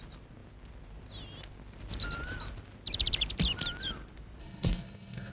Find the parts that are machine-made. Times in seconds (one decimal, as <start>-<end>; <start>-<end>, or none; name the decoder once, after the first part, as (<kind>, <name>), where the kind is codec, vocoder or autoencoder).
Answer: 4.4-5.3 (codec, SNAC)